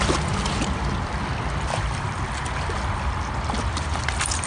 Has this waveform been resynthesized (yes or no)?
yes